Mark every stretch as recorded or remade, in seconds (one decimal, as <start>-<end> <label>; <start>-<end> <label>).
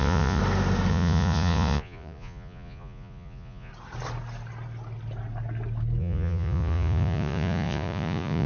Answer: 0.0-0.4 remade; 0.4-0.9 recorded; 0.9-3.7 remade; 3.7-6.0 recorded; 6.0-8.5 remade